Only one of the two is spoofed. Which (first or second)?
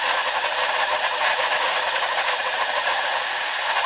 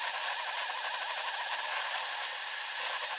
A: first